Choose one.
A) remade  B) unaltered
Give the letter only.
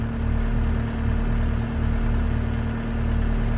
B